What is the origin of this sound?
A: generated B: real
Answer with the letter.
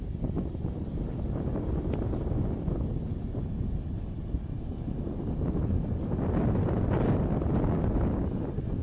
B